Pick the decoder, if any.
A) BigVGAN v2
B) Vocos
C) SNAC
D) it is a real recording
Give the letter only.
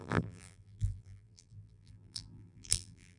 A